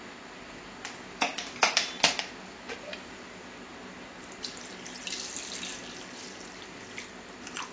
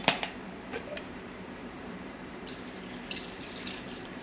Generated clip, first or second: second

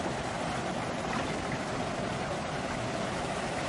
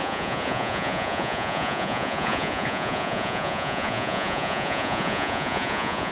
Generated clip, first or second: second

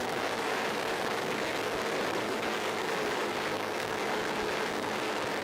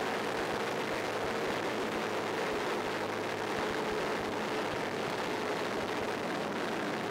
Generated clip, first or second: first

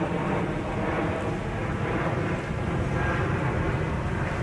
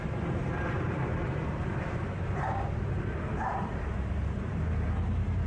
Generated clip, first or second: second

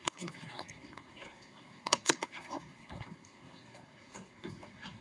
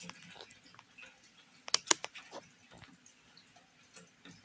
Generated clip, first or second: first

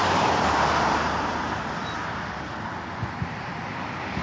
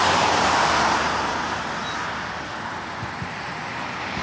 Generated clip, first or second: first